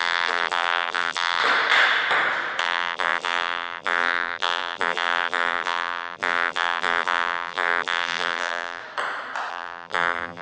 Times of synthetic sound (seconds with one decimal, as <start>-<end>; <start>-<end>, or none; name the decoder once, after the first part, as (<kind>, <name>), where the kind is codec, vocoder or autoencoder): 0.0-1.4 (vocoder, BigVGAN v2); 2.6-8.8; 9.5-10.4